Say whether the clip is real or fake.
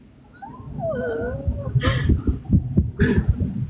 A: real